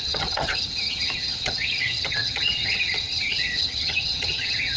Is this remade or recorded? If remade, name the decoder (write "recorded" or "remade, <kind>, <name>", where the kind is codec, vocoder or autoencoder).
remade, vocoder, HiFi-GAN